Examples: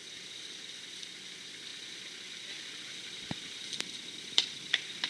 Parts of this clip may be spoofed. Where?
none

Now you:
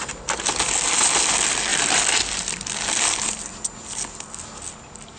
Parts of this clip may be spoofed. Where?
1.7-3.5 (vocoder, BigVGAN v2)

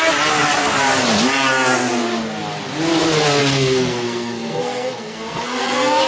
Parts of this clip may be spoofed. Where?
3.4-6.1 (codec, SNAC)